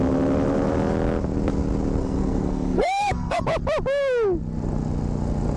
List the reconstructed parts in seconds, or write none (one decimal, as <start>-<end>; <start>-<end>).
2.0-3.4